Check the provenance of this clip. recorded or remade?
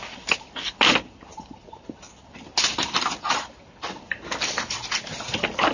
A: recorded